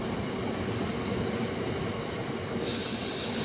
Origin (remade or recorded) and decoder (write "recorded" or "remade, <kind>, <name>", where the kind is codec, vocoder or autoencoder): recorded